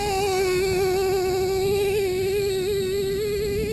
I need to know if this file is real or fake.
real